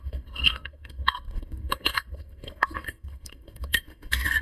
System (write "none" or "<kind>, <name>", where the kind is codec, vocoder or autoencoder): codec, SNAC